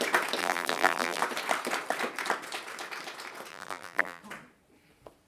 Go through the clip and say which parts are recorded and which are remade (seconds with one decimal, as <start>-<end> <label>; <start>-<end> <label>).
0.0-0.4 recorded; 0.4-1.2 remade; 1.2-3.5 recorded; 3.5-4.2 remade; 4.2-5.3 recorded